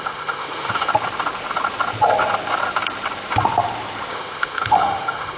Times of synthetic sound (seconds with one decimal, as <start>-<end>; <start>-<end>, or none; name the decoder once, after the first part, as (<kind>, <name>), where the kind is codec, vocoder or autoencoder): 0.0-0.9 (autoencoder, DAC-VAE); 4.1-5.4